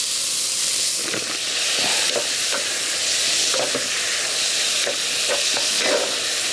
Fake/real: fake